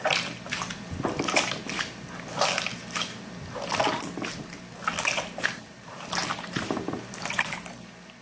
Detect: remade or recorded recorded